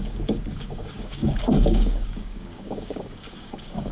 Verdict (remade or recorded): remade